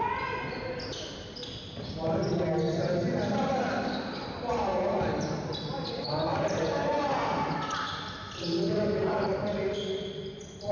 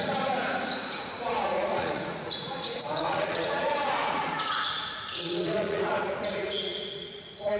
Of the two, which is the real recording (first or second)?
first